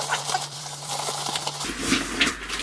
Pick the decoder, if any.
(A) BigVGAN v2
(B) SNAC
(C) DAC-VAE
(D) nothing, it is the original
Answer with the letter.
A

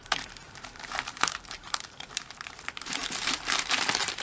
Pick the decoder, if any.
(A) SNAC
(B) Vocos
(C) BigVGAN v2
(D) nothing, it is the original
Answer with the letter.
C